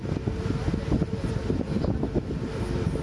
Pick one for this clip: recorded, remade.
recorded